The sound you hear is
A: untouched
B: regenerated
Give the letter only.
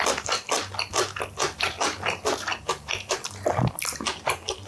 A